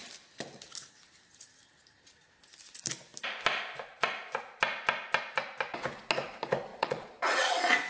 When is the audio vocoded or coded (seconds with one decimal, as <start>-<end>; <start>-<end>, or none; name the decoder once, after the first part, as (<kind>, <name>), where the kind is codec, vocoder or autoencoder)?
6.7-7.9 (vocoder, Vocos)